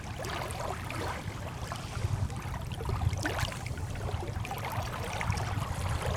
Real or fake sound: real